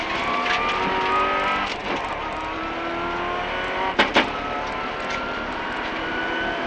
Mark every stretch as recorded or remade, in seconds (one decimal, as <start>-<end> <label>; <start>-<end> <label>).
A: 0.0-6.7 recorded